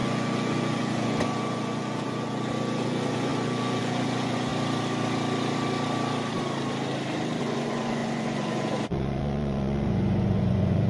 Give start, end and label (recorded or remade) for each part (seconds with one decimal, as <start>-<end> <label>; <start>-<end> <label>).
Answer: 0.0-4.5 remade; 4.5-7.4 recorded; 7.4-10.9 remade